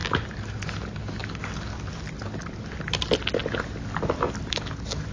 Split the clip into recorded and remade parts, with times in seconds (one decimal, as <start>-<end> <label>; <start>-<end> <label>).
0.0-5.1 recorded